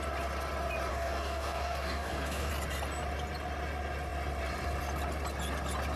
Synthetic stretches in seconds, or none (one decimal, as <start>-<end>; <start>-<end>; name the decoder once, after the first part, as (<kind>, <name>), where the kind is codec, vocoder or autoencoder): 0.9-2.5 (codec, DAC)